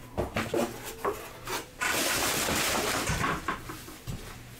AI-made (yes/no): no